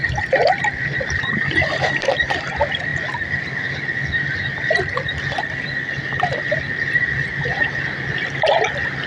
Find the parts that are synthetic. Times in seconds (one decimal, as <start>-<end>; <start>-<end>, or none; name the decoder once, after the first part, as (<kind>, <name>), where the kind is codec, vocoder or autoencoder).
none